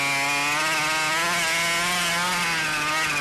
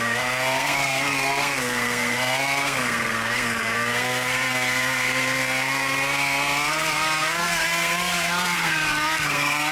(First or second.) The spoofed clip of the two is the second